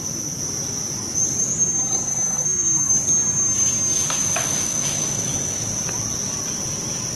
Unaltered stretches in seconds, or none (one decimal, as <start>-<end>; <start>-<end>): 0.0-2.1; 2.9-4.2; 5.7-7.2